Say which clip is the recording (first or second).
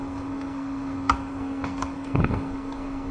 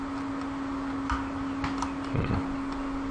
second